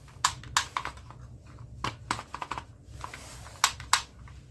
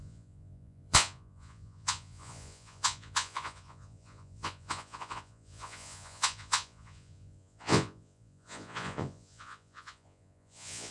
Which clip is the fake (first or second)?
second